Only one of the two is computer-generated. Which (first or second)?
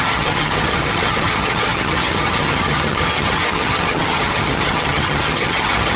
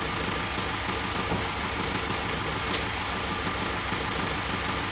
first